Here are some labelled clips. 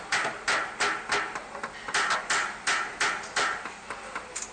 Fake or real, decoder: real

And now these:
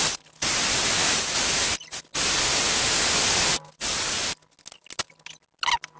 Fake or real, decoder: real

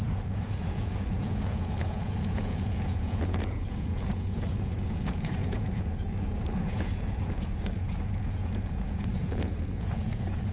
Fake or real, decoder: fake, vocoder, Vocos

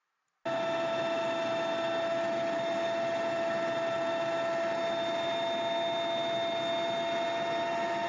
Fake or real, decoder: real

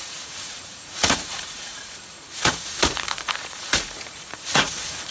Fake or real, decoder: fake, vocoder, Vocos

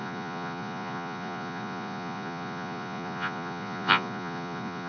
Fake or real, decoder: fake, vocoder, Vocos